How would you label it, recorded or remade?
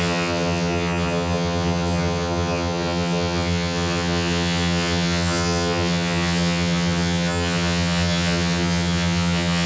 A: remade